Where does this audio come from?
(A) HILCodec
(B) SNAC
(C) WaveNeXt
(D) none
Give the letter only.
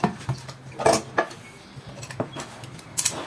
D